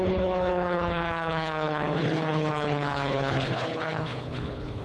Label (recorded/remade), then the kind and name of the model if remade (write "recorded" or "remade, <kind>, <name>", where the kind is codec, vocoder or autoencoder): remade, codec, HILCodec